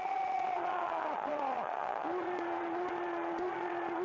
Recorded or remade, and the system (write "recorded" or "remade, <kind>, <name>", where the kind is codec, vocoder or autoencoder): remade, vocoder, Vocos